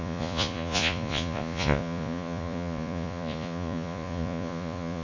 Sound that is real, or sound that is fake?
fake